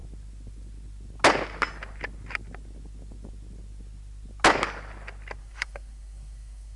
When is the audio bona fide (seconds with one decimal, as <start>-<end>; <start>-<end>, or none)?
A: 0.0-5.4